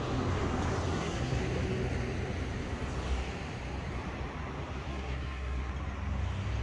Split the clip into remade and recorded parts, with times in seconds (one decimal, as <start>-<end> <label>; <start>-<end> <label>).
0.0-0.9 recorded; 0.9-1.4 remade; 1.4-4.9 recorded; 4.9-5.7 remade; 5.7-6.6 recorded